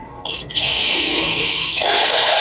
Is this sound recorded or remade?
remade